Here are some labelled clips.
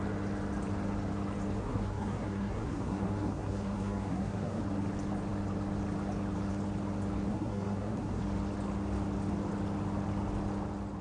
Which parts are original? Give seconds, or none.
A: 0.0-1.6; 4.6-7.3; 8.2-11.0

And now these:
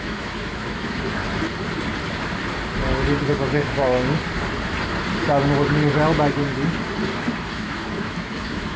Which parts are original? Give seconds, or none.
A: 1.2-3.3; 3.9-7.5

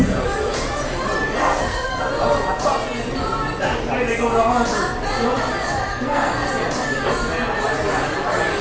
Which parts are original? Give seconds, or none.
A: 0.0-1.4; 2.0-5.9; 6.5-8.6

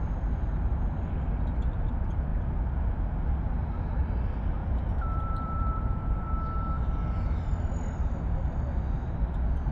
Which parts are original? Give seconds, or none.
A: 0.0-4.6; 6.8-9.7

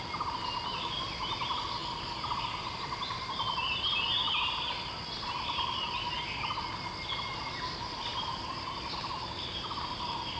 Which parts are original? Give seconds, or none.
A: 0.0-10.4